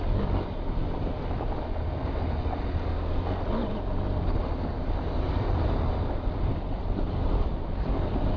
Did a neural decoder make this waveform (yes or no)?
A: no